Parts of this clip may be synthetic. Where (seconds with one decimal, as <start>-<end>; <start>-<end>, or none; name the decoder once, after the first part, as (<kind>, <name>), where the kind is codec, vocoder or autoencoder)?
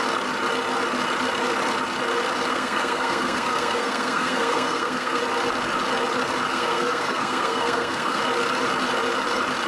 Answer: 2.5-5.2 (codec, SNAC); 6.5-8.2